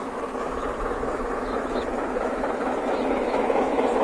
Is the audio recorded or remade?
remade